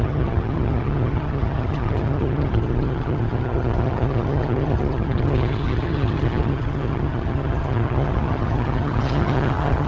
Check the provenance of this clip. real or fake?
fake